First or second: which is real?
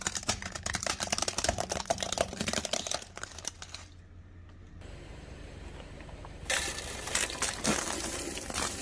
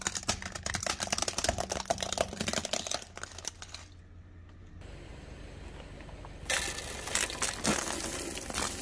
second